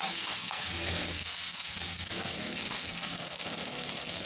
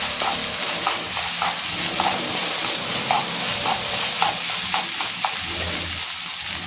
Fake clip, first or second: first